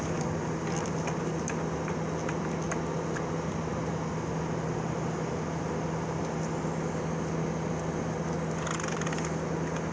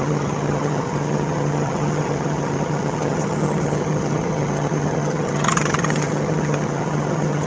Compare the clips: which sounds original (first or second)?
first